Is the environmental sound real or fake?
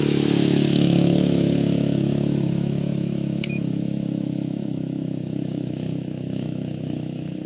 fake